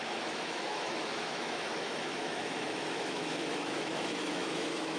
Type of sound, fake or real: fake